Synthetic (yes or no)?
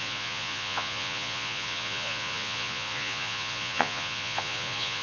yes